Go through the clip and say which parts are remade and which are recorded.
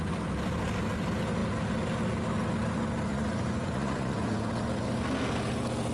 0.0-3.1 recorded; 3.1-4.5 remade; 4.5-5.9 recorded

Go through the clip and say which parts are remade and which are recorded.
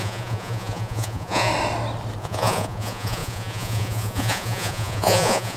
0.0-1.5 remade; 1.5-2.2 recorded; 2.2-5.6 remade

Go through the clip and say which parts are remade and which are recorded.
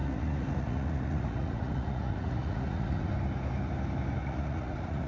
0.0-3.1 remade; 3.1-4.2 recorded; 4.2-5.1 remade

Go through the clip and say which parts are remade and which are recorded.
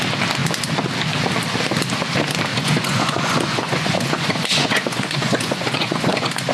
0.0-2.5 recorded; 2.5-6.5 remade